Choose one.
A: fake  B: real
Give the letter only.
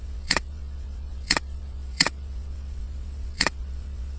A